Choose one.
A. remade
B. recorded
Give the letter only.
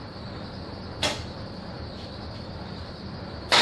A